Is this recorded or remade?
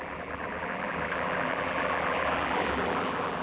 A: remade